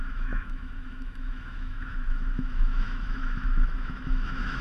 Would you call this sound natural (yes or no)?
no